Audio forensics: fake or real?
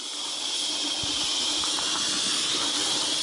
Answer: real